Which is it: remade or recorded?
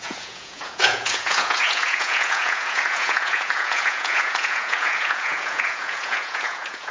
remade